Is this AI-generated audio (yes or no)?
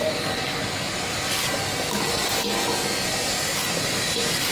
no